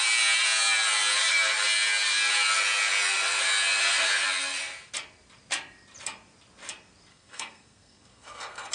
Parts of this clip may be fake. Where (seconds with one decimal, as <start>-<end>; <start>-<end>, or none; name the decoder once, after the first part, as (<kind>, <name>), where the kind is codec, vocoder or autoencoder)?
7.1-8.7 (codec, SNAC)